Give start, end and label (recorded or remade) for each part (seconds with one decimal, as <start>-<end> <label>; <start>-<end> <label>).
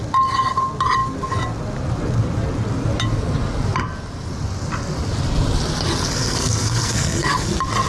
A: 0.0-6.0 recorded; 6.0-7.5 remade; 7.5-7.9 recorded